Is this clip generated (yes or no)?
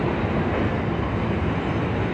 no